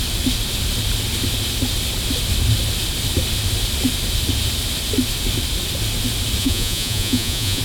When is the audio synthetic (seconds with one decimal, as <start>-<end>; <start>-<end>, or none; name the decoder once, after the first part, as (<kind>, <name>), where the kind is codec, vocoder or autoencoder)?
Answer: 6.4-7.6 (vocoder, Vocos)